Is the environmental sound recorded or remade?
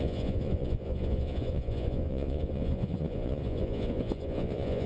remade